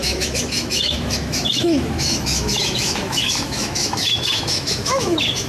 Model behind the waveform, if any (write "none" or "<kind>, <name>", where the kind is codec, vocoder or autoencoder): autoencoder, DAC-VAE